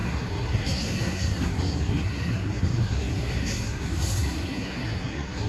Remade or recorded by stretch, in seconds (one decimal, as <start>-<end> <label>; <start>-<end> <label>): 0.0-5.5 remade